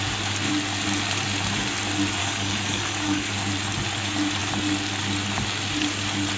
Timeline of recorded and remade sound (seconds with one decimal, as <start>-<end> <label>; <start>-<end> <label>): 0.0-2.2 recorded; 2.2-3.3 remade; 3.3-6.4 recorded